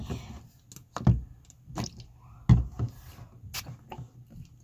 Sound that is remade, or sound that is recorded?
recorded